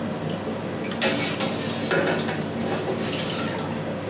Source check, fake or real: real